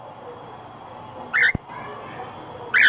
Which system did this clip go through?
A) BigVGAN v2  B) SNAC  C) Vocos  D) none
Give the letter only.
D